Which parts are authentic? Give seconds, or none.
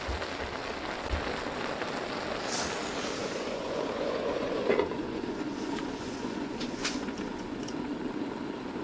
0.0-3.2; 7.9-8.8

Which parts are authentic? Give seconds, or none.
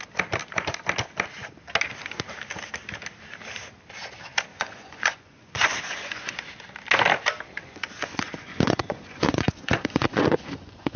0.0-4.5; 6.3-7.6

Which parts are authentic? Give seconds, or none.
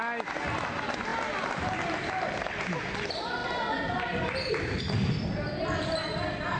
0.0-6.6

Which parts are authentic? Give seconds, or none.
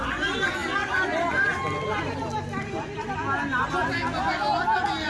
0.0-5.1